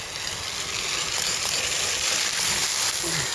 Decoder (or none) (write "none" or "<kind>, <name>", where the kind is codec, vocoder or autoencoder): none